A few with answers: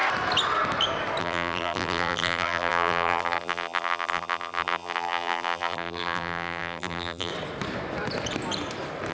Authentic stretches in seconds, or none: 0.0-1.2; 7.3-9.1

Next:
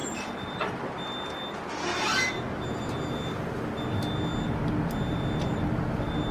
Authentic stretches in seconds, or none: 0.8-6.3

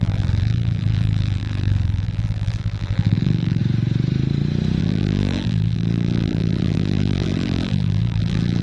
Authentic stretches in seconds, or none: 3.6-4.8

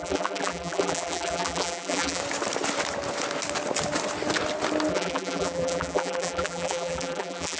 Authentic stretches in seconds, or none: 2.2-4.9

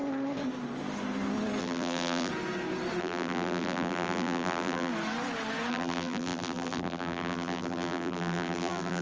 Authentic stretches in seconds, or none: 0.0-1.6; 2.3-3.0; 4.9-5.7

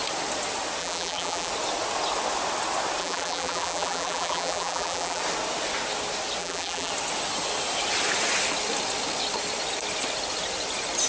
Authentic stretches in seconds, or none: 0.0-0.8; 1.5-3.0; 5.2-6.4; 6.9-11.1